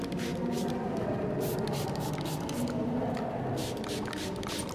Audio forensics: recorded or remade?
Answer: recorded